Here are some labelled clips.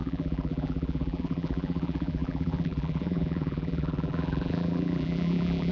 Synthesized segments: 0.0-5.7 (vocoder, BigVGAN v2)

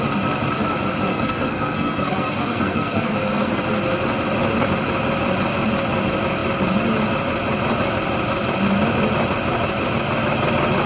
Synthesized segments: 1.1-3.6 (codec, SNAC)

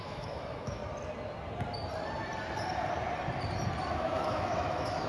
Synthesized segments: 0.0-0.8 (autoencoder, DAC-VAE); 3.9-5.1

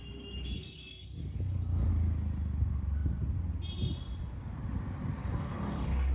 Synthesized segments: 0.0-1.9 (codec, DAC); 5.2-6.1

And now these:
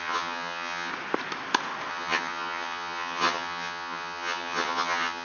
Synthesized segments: 0.0-0.9 (vocoder, HiFi-GAN); 1.9-5.2

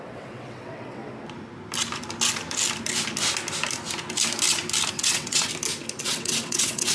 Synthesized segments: 0.0-1.0 (vocoder, WaveNeXt); 4.9-5.5; 6.0-6.9